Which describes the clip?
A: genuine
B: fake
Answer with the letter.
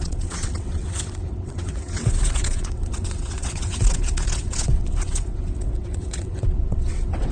B